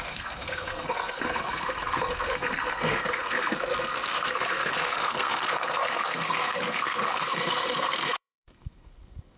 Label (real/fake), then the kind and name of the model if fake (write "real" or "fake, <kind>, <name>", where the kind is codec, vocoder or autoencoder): fake, codec, SNAC